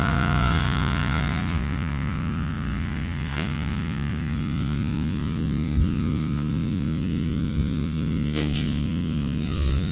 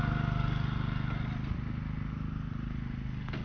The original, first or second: second